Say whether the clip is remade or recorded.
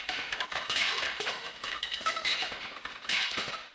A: remade